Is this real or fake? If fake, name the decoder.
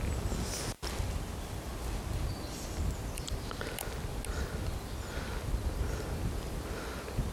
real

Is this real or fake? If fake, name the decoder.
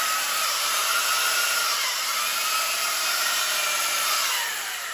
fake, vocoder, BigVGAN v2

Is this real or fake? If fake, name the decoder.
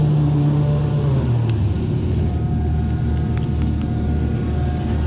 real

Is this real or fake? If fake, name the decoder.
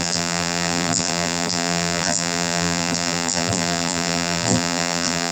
fake, vocoder, BigVGAN v2